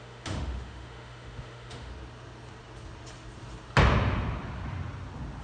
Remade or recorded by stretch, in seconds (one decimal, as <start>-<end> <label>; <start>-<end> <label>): 0.0-1.9 remade; 1.9-5.4 recorded